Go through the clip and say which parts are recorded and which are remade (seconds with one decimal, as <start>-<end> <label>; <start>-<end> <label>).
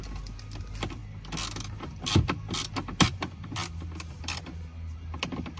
0.0-5.6 recorded